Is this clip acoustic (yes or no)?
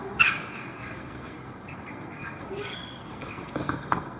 no